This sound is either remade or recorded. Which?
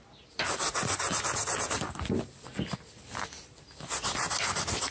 recorded